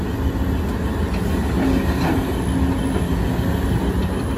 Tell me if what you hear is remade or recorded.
recorded